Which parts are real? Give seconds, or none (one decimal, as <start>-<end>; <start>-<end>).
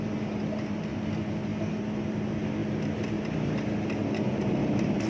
0.9-1.7